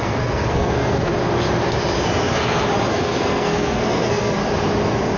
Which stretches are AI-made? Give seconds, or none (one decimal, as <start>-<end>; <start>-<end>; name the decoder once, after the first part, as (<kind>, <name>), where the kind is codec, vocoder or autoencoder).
0.0-1.1 (codec, SNAC); 2.9-4.4